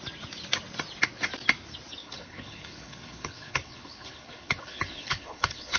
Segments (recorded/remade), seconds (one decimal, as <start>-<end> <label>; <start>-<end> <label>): 0.0-2.0 recorded; 2.0-5.8 remade